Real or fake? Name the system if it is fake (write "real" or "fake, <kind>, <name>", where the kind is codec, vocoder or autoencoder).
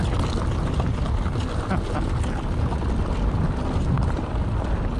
real